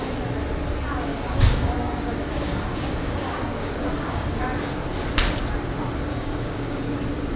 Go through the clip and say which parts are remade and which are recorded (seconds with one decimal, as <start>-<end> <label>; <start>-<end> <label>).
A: 0.0-1.1 recorded; 1.1-4.4 remade; 4.4-6.1 recorded; 6.1-7.0 remade; 7.0-7.4 recorded